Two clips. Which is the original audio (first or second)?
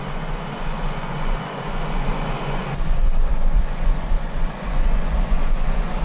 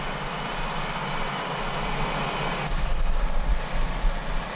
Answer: second